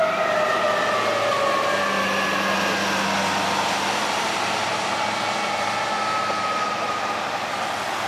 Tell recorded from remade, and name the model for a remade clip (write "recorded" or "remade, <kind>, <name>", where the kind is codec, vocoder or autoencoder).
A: recorded